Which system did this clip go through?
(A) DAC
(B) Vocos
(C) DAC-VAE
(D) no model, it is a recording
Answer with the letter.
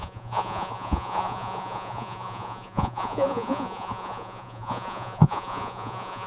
B